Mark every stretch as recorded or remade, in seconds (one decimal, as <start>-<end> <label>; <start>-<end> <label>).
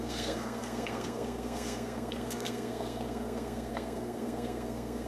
0.0-5.1 remade